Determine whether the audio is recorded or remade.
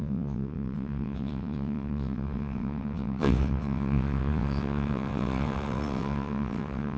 remade